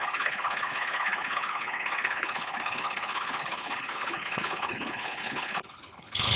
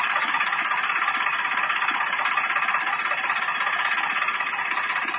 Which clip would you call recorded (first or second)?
second